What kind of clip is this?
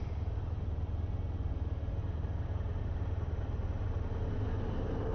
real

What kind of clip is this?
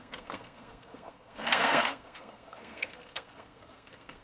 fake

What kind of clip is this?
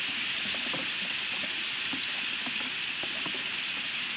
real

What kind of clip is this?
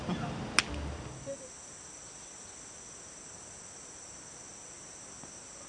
real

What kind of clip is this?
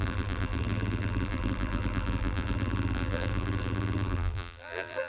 fake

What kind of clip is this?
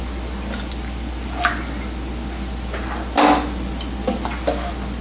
real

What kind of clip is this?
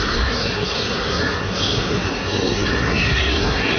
fake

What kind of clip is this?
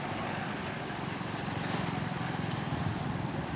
real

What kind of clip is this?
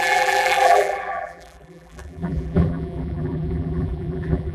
fake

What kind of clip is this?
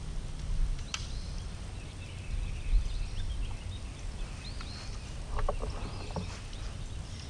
real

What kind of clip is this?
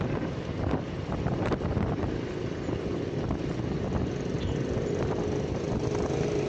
real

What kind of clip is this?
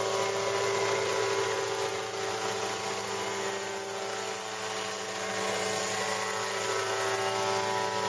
real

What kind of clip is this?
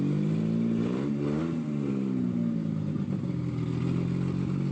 real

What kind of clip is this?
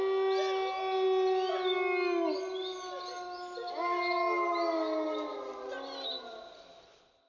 real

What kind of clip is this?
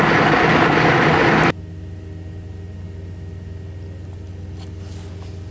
real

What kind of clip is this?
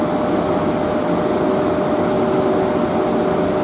real